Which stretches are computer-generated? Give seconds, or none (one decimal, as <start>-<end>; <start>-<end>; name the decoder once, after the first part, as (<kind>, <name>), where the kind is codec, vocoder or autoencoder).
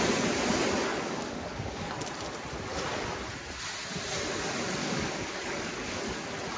0.9-2.0 (codec, DAC); 4.8-6.0